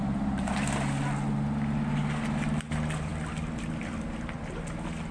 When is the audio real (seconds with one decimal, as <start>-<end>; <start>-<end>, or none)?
0.0-5.1